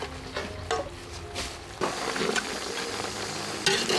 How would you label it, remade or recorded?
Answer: recorded